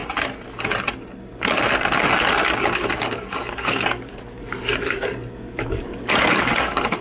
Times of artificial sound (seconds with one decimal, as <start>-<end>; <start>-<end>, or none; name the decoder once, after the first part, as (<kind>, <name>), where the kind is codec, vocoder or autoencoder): 2.7-7.0 (codec, DAC)